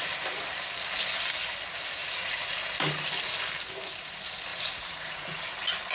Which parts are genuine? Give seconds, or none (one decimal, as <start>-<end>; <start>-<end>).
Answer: 0.0-2.0; 2.6-4.5; 5.4-5.9